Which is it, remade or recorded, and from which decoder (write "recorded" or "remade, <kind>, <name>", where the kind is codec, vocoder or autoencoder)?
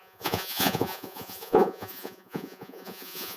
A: remade, vocoder, Vocos